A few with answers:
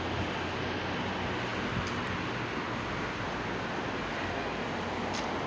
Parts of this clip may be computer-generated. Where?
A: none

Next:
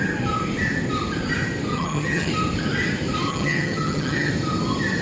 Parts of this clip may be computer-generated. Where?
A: 1.7-2.3; 3.3-4.3

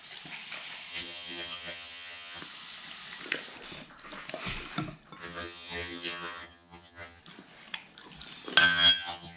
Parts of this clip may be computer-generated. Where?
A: 0.9-2.4; 5.2-7.2; 8.6-9.4

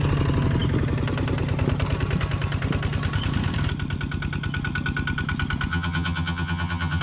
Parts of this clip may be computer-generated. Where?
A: 5.7-7.0

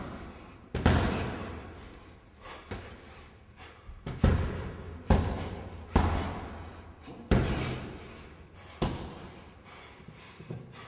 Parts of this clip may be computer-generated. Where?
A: none

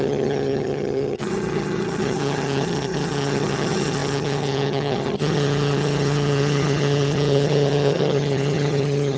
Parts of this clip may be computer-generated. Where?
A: 0.0-9.2